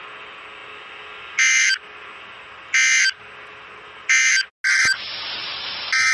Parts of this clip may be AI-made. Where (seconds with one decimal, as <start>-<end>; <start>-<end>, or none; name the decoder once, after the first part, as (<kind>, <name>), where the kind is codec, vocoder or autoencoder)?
none